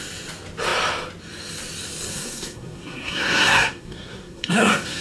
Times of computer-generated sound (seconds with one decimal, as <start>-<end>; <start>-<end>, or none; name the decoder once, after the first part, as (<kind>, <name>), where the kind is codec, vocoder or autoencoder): 2.1-5.0 (codec, SNAC)